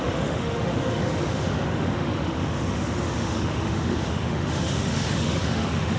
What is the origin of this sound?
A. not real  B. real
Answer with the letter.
A